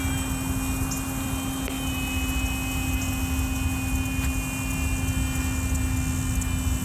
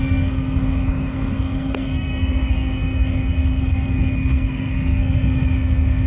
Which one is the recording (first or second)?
first